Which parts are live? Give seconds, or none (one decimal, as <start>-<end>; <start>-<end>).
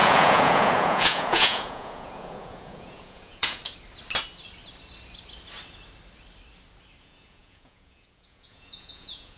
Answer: 3.6-7.0